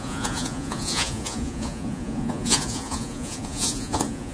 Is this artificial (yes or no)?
yes